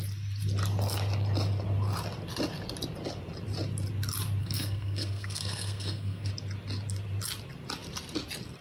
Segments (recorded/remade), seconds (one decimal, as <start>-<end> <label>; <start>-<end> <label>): 0.0-4.4 recorded; 4.4-6.3 remade; 6.3-8.6 recorded